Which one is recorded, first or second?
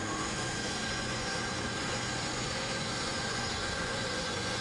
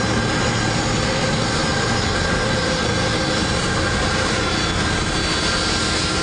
second